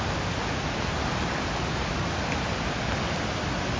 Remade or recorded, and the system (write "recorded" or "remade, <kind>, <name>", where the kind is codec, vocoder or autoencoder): recorded